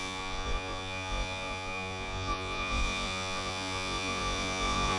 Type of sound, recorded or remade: remade